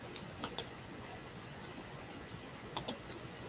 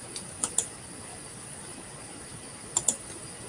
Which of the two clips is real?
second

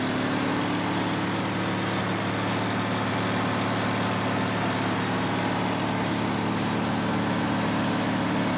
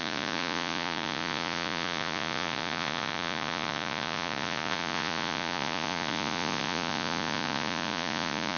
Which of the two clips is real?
first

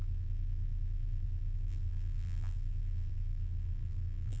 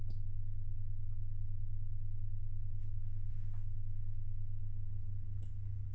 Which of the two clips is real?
second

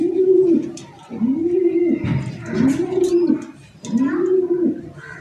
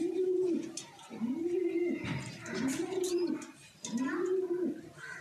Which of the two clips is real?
first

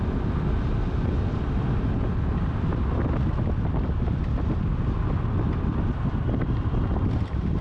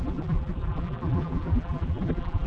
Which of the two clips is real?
first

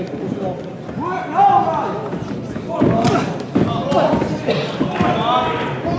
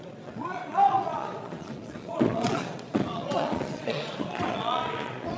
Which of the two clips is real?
first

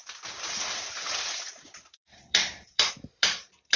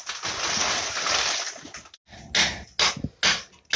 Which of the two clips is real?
second